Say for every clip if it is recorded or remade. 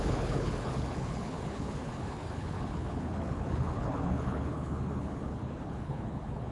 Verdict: remade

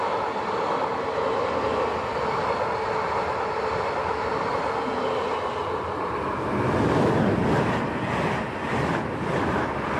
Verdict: recorded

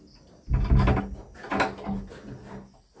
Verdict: recorded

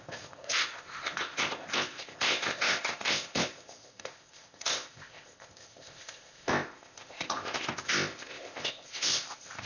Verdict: remade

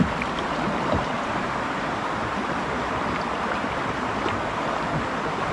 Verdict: remade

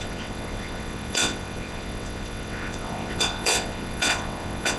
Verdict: remade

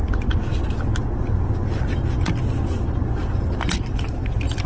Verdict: recorded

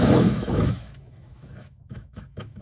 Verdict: remade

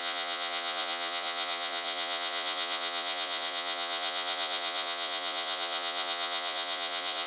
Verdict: remade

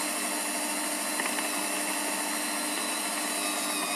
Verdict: recorded